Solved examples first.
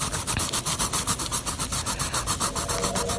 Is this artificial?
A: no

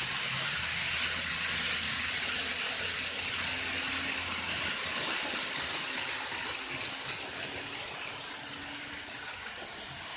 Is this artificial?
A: no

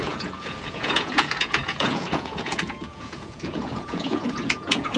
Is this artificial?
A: yes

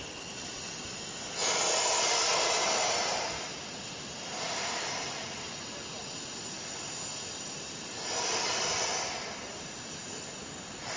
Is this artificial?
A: no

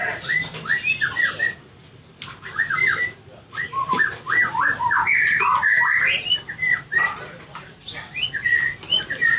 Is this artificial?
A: no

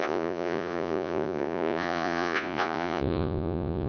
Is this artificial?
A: yes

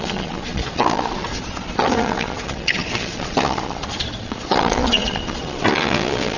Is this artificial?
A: yes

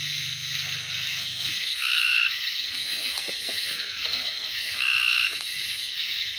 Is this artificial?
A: yes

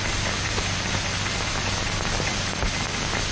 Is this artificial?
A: no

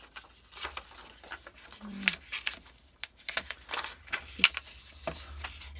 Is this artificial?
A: no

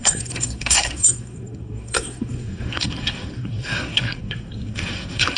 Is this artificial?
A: yes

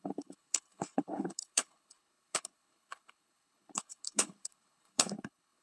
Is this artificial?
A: yes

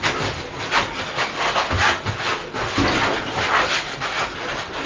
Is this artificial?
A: no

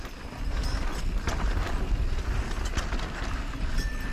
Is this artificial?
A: no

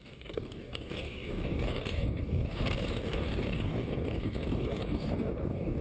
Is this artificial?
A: yes